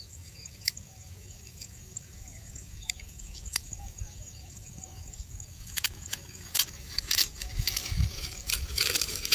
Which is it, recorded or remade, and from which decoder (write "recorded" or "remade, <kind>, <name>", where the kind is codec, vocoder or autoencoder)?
remade, codec, DAC